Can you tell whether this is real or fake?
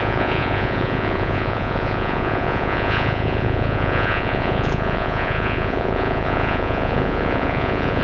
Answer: fake